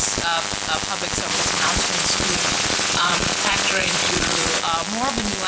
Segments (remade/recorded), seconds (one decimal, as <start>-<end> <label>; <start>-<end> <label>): 0.0-1.3 recorded; 1.3-4.6 remade; 4.6-5.5 recorded